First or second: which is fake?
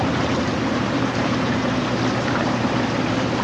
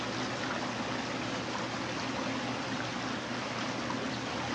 first